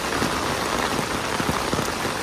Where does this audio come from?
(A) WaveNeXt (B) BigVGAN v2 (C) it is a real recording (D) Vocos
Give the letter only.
C